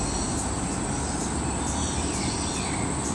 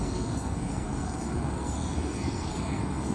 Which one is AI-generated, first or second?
second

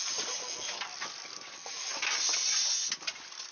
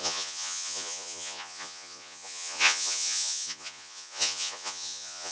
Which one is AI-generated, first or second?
second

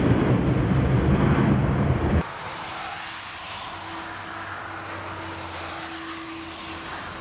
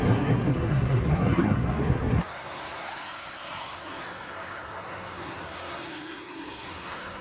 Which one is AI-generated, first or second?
second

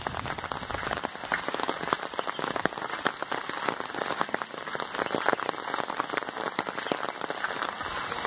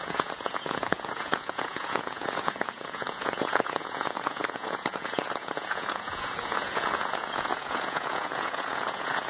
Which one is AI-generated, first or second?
second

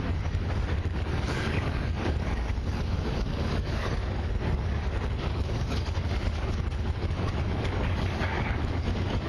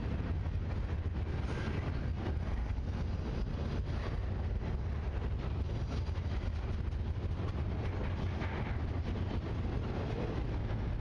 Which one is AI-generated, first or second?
first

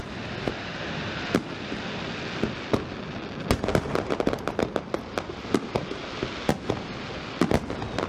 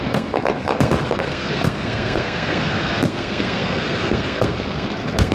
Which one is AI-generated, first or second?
second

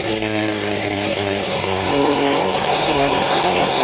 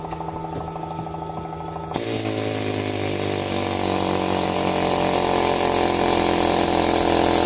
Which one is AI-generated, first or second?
first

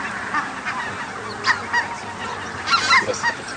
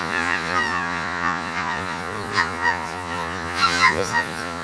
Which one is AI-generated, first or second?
second